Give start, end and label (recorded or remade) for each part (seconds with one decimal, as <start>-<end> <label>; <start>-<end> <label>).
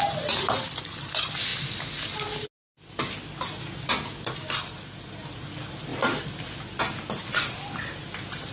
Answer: 0.0-8.5 recorded